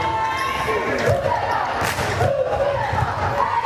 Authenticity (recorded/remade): recorded